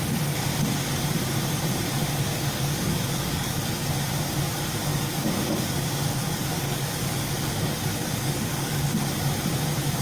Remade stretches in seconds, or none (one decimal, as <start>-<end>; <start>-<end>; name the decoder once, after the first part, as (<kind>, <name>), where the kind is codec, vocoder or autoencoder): 2.3-3.9 (codec, DAC); 4.9-9.1